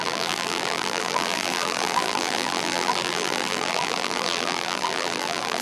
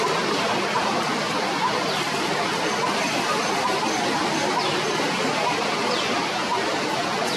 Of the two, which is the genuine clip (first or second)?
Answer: second